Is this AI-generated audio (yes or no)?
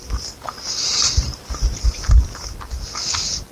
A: no